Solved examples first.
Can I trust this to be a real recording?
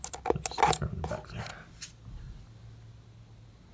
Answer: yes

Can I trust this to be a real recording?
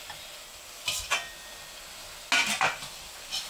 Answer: yes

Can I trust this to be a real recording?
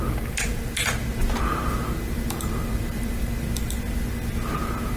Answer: yes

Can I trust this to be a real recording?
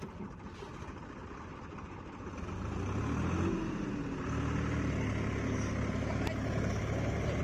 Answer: yes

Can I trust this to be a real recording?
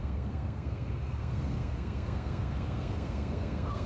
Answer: no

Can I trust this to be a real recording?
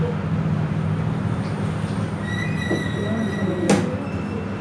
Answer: yes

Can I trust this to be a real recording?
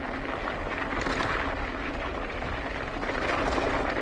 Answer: yes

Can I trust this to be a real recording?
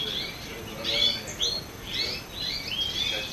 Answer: yes